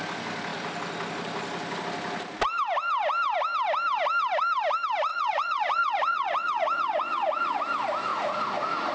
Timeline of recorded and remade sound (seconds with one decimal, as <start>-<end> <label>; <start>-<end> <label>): 0.0-5.1 recorded; 5.1-7.6 remade; 7.6-8.1 recorded; 8.1-8.9 remade